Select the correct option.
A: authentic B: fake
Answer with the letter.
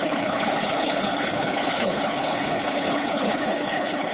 B